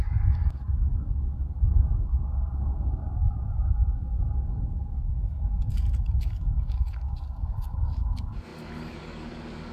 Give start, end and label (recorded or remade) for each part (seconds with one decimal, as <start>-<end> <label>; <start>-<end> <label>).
0.0-9.7 remade